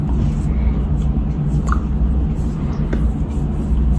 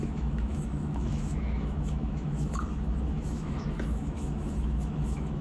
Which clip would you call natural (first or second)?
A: first